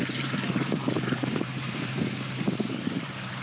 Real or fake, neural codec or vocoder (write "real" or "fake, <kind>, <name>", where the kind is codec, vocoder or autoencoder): fake, vocoder, BigVGAN v2